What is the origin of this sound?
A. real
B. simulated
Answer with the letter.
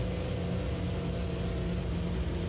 A